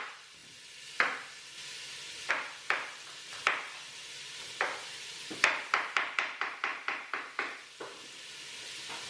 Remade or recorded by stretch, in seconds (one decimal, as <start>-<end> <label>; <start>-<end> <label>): 0.0-9.1 recorded